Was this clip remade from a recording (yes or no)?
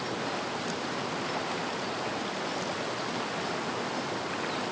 no